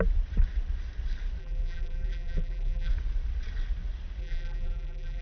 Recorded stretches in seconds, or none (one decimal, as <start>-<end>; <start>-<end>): 0.0-1.4; 2.9-4.2